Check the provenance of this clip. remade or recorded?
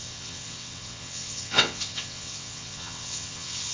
remade